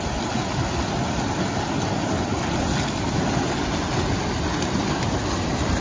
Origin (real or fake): real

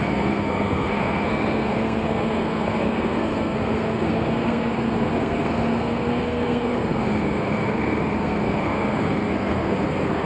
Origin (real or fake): fake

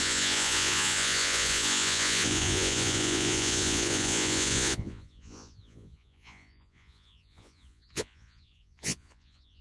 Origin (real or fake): fake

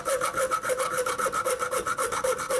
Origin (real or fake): real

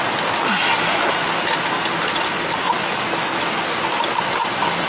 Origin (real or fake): real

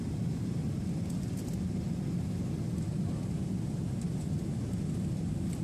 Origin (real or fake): real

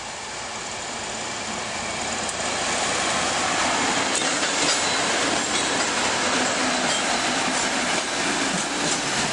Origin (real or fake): real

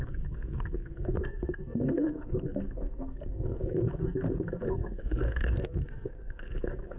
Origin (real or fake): fake